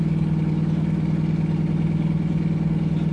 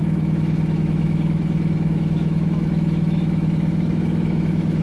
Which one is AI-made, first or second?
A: second